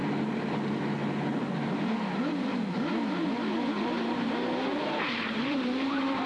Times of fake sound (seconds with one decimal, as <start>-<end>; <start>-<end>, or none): 3.8-6.3